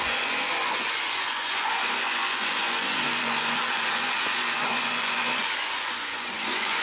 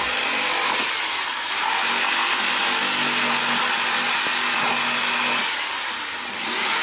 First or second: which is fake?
first